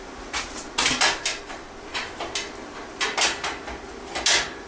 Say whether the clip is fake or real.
real